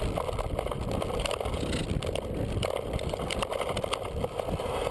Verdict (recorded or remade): recorded